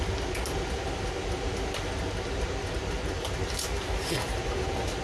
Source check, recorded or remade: recorded